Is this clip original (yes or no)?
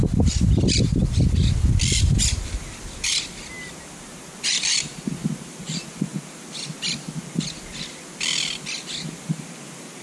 yes